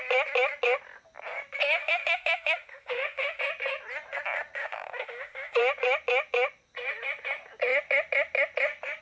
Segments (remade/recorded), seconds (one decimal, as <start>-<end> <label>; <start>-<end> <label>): 0.0-1.8 recorded; 1.8-3.4 remade; 3.4-4.6 recorded; 4.6-5.6 remade; 5.6-9.0 recorded